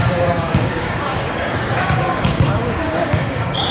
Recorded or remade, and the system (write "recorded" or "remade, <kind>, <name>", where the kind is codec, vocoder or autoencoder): remade, codec, DAC